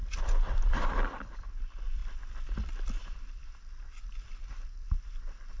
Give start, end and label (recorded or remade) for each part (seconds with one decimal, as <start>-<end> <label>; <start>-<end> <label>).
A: 0.0-1.4 remade; 1.4-5.6 recorded